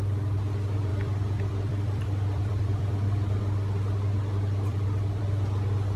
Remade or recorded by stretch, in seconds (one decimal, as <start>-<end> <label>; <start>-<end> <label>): 0.0-0.9 recorded; 0.9-3.4 remade; 3.4-4.7 recorded; 4.7-5.2 remade; 5.2-6.0 recorded